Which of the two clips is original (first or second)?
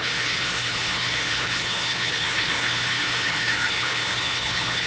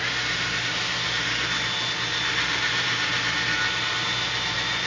second